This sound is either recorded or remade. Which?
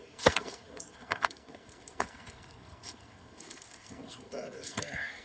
remade